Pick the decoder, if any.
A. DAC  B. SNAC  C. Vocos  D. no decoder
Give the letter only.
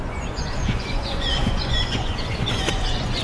C